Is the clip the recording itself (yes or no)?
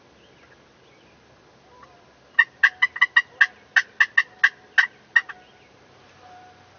yes